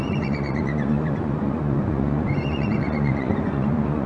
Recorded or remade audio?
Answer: remade